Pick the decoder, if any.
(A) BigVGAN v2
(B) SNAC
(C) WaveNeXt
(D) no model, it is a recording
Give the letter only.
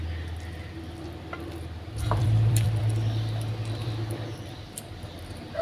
A